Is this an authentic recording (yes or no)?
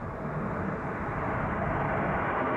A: yes